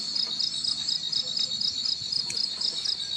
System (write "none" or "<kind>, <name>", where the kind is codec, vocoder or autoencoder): none